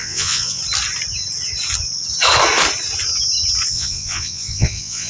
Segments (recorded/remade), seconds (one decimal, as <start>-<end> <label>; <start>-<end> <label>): 0.0-0.6 remade; 0.6-3.7 recorded; 3.7-5.1 remade